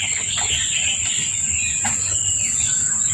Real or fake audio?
real